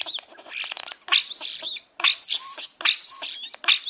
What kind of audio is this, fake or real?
real